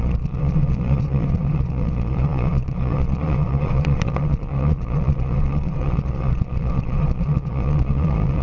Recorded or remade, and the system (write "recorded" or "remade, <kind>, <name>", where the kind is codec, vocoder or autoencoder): remade, vocoder, Vocos